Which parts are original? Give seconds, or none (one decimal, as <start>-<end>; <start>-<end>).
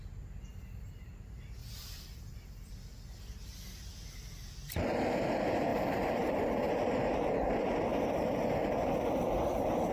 0.0-0.5; 1.1-1.6; 2.7-5.7; 6.7-7.9